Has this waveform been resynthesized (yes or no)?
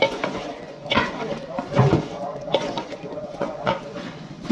yes